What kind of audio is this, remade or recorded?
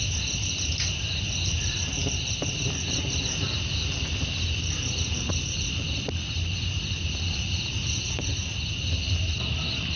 recorded